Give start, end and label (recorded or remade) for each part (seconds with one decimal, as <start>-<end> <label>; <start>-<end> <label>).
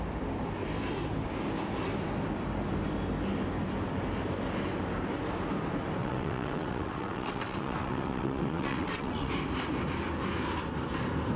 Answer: 0.0-6.0 recorded; 6.0-9.3 remade; 9.3-11.4 recorded